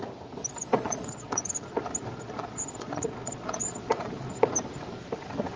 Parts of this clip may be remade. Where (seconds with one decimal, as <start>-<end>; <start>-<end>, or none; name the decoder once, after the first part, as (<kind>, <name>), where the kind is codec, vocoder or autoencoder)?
0.7-1.4 (vocoder, Vocos); 2.1-4.5